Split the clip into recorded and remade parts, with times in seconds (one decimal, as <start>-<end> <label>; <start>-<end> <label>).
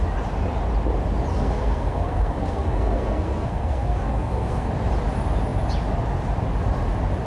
0.0-1.3 recorded; 1.3-4.7 remade; 4.7-7.3 recorded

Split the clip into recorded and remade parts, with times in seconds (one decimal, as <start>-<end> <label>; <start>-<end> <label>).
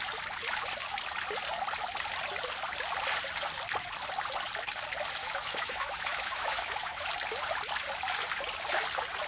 0.0-5.2 recorded; 5.2-7.1 remade; 7.1-9.3 recorded